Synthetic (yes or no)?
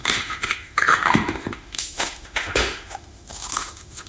yes